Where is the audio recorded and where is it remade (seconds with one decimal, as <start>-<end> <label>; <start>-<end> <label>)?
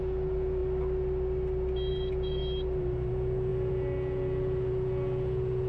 0.0-0.6 remade; 0.6-1.9 recorded; 1.9-2.4 remade; 2.4-3.1 recorded; 3.1-5.7 remade